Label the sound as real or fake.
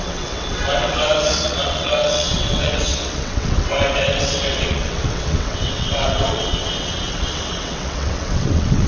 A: fake